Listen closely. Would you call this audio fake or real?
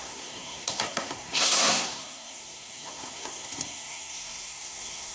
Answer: fake